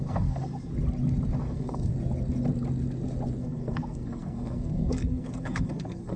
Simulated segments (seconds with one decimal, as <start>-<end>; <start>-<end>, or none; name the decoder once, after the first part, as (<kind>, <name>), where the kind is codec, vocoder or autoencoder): 0.0-0.7 (codec, SNAC); 1.4-1.9; 3.4-6.2

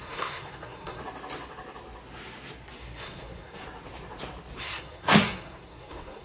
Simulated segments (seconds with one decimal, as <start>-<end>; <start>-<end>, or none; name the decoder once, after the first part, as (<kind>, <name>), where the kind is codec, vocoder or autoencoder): 0.0-1.0 (codec, SNAC); 2.8-3.6; 4.6-6.2

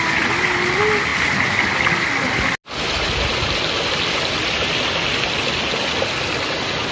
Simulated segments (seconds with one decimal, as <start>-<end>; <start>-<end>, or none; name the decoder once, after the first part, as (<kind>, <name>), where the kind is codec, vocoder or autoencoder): none

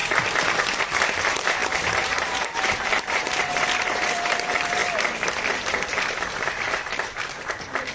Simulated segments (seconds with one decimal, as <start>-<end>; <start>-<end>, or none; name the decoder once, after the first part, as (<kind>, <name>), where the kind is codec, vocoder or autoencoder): 0.8-4.8 (vocoder, BigVGAN v2); 5.5-7.9

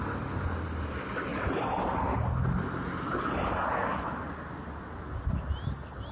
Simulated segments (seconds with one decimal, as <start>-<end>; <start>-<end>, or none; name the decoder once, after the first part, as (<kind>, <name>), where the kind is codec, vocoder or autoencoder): none